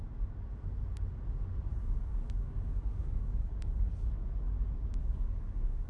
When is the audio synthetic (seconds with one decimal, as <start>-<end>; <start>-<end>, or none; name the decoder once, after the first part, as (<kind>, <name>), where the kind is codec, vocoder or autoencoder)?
1.7-4.1 (codec, DAC); 5.0-5.9

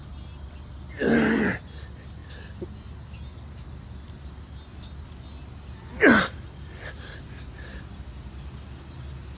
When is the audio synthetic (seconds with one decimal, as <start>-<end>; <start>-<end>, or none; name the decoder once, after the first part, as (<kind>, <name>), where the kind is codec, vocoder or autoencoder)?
none

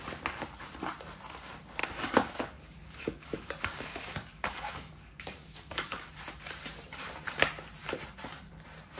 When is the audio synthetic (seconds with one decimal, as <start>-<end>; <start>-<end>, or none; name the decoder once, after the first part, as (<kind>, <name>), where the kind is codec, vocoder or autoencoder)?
1.8-6.1 (codec, DAC)

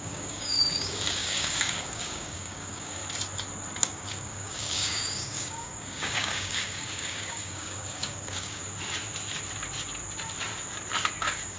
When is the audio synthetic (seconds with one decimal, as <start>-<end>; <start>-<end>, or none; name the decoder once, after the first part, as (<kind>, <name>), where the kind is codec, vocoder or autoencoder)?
0.0-3.0 (codec, DAC); 3.8-8.6; 11.2-11.6

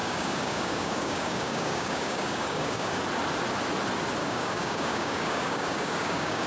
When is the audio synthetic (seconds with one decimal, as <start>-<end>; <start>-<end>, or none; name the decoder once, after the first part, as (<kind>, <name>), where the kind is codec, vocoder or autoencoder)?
0.0-3.0 (codec, DAC); 4.2-6.5

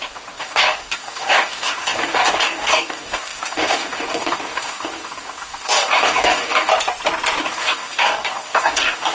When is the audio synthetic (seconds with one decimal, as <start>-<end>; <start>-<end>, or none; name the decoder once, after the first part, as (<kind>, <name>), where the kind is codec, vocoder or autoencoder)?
0.0-6.7 (codec, DAC); 7.4-9.1

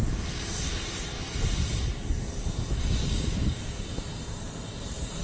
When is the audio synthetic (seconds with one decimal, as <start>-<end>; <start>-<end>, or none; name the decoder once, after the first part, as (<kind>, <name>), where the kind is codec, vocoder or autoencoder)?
3.0-3.6 (codec, DAC)